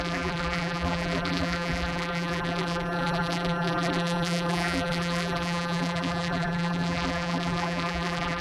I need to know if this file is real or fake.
fake